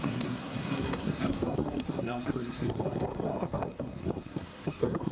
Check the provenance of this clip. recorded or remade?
remade